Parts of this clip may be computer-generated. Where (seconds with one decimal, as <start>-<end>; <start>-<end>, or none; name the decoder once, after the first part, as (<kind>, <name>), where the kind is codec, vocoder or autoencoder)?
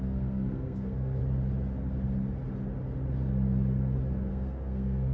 0.0-1.2 (codec, SNAC); 4.3-5.1